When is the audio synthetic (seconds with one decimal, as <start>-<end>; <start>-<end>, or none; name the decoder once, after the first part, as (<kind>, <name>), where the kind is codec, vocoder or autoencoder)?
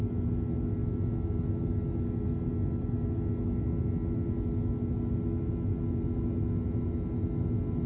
none